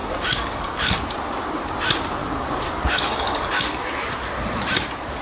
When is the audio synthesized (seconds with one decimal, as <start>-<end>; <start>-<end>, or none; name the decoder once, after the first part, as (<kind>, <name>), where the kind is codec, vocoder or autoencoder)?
0.0-1.0 (codec, DAC); 2.2-3.9